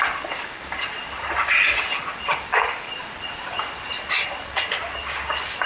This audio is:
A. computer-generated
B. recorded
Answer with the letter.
B